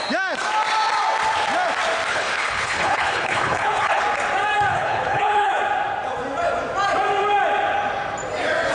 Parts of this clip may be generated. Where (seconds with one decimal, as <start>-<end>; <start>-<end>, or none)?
2.1-4.0; 4.7-5.6